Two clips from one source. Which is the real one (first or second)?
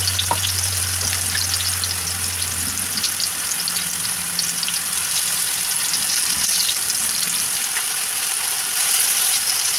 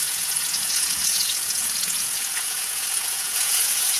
first